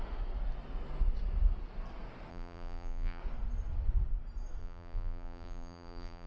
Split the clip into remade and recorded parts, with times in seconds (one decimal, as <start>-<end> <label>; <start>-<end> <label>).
0.0-2.3 recorded; 2.3-3.2 remade; 3.2-4.6 recorded; 4.6-6.3 remade